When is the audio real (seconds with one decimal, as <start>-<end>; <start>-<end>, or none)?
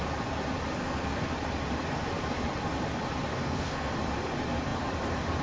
0.0-0.8; 1.3-3.3; 3.9-5.4